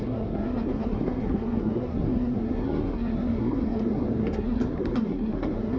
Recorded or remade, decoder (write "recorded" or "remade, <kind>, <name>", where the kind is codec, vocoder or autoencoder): remade, codec, SNAC